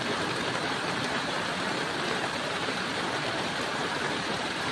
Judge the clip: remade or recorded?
remade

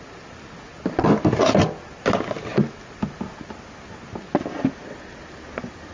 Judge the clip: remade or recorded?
recorded